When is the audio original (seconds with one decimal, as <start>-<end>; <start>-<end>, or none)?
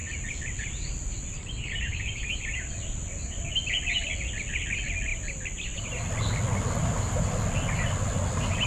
3.5-5.1; 6.1-6.8; 7.3-8.7